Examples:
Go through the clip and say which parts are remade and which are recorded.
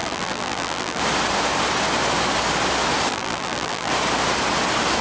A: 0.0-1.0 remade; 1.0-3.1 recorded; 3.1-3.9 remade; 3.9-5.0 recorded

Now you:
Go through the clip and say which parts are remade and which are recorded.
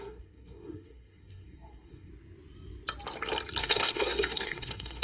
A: 0.0-2.1 remade; 2.1-3.6 recorded; 3.6-5.0 remade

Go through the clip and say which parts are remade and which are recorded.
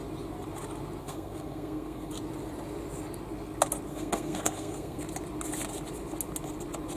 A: 0.0-1.0 recorded; 1.0-2.1 remade; 2.1-3.9 recorded; 3.9-5.0 remade; 5.0-7.0 recorded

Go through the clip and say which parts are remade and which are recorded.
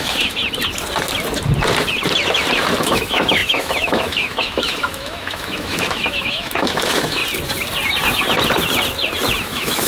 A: 0.0-0.4 remade; 0.4-2.8 recorded; 2.8-7.2 remade; 7.2-9.4 recorded; 9.4-9.9 remade